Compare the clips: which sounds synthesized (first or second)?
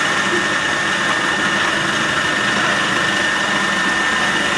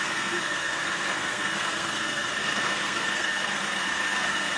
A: second